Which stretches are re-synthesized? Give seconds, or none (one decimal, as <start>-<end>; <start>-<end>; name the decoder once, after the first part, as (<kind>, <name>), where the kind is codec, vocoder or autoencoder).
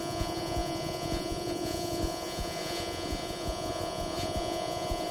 0.0-5.1 (vocoder, Vocos)